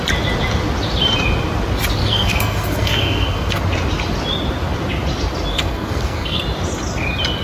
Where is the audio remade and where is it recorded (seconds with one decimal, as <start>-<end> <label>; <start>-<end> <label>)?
0.0-2.0 recorded; 2.0-3.6 remade; 3.6-5.5 recorded; 5.5-6.4 remade; 6.4-7.4 recorded